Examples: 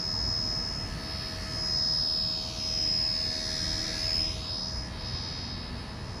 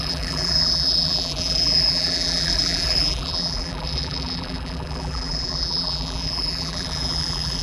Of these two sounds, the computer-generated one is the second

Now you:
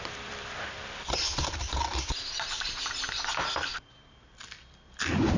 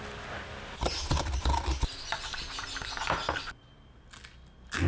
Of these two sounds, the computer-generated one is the first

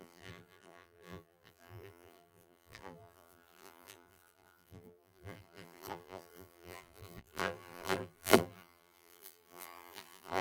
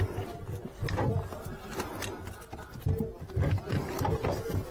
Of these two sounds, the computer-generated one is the first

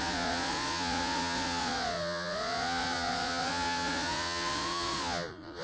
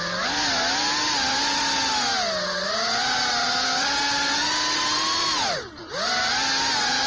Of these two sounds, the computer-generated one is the first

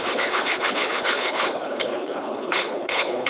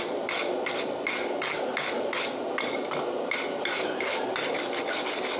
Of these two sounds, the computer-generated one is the first